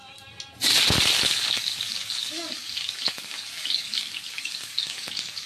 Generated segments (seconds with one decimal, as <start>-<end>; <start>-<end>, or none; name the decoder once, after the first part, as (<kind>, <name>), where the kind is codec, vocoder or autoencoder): 1.2-5.5 (codec, DAC)